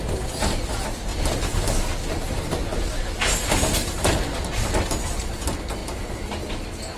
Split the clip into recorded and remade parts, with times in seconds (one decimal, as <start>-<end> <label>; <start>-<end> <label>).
0.0-7.0 recorded